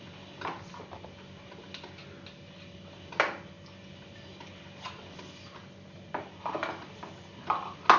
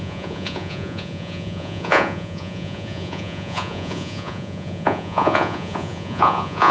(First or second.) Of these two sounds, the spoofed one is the second